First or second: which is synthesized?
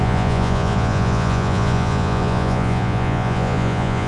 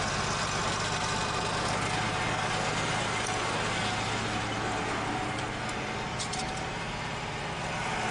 first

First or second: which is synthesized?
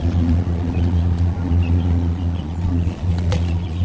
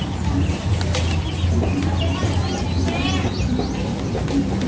first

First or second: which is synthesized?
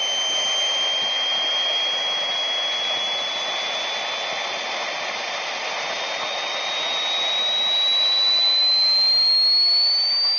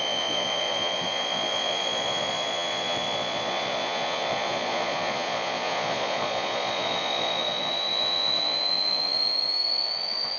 second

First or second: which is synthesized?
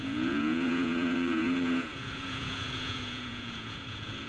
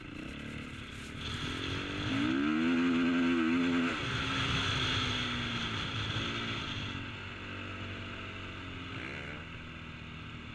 first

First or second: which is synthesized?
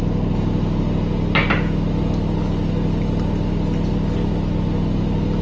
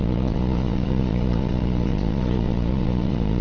second